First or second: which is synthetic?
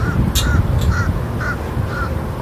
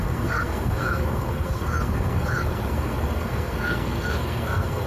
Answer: second